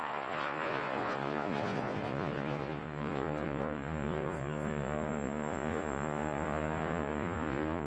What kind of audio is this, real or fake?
fake